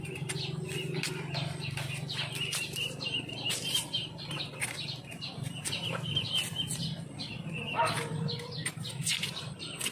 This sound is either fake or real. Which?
real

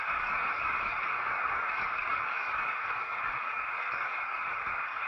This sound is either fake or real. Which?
fake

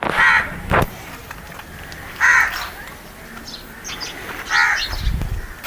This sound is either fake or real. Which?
real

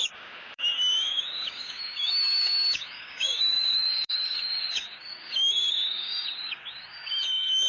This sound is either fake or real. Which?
fake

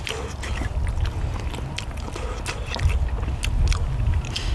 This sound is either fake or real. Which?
real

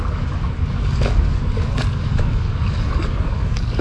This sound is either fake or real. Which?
fake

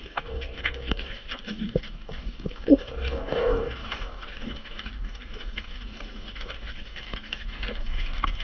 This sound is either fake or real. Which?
fake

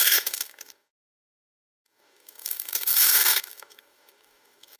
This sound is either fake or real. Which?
fake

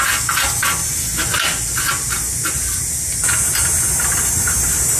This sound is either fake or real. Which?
real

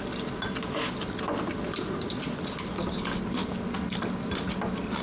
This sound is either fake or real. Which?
real